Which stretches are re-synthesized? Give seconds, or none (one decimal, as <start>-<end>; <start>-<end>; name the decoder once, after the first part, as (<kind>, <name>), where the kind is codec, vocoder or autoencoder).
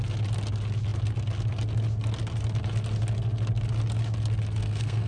4.6-5.1 (codec, SNAC)